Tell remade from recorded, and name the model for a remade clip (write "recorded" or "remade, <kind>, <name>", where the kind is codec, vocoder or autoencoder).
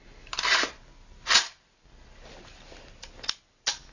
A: recorded